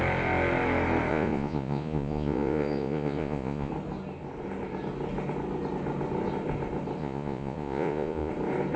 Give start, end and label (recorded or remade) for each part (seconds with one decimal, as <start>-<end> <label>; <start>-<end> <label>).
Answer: 0.0-1.1 recorded; 1.1-3.7 remade; 3.7-7.0 recorded; 7.0-8.3 remade; 8.3-8.8 recorded